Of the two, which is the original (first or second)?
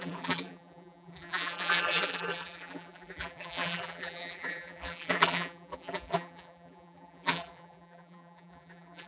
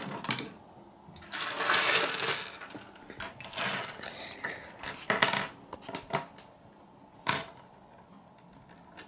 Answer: second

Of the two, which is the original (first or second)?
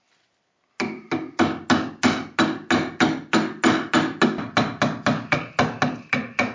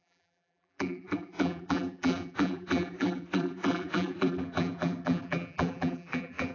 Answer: first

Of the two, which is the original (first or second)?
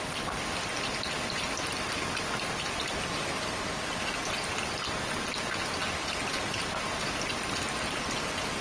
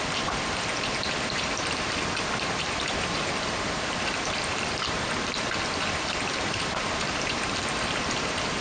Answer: first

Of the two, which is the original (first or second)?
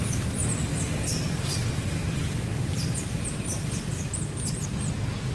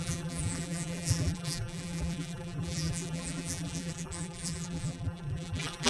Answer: first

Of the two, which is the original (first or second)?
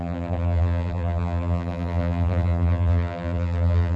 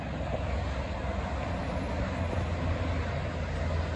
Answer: second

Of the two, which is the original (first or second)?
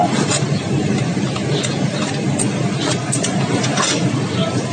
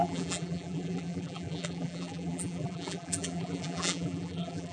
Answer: first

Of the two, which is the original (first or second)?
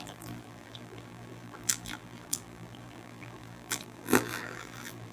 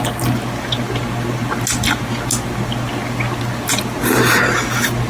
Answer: second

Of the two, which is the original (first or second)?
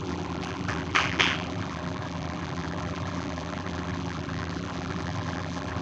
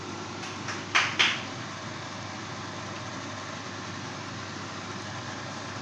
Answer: second